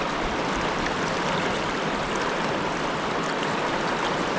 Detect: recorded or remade recorded